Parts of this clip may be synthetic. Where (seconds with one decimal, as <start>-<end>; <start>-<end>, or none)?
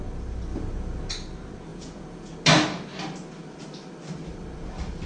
1.7-2.3